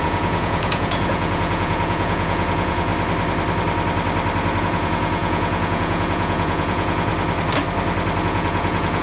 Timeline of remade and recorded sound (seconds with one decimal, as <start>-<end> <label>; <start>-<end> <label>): 0.0-2.9 remade; 2.9-4.6 recorded; 4.6-7.1 remade; 7.1-8.2 recorded; 8.2-9.0 remade